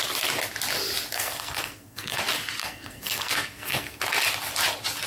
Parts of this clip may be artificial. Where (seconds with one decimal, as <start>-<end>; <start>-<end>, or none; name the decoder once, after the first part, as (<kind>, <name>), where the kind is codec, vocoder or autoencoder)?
1.1-2.2 (codec, SNAC); 2.6-4.0